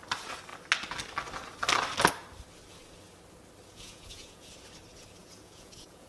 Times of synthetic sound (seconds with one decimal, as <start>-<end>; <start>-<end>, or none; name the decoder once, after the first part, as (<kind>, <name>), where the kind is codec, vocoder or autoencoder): 3.7-4.5 (vocoder, Vocos); 5.2-6.1